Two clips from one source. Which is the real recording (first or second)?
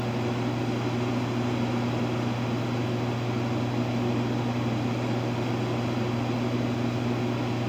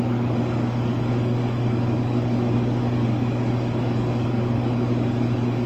first